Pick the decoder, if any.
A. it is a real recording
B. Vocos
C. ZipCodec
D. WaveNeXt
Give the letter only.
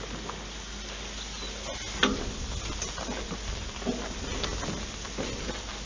A